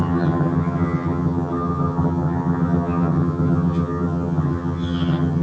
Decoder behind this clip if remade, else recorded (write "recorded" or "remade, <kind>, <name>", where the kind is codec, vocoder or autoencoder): remade, vocoder, HiFi-GAN